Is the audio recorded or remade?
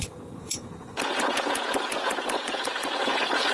remade